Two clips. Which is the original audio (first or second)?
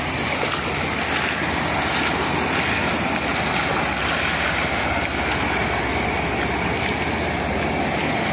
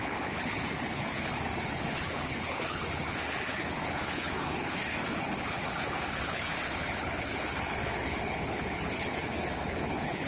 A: first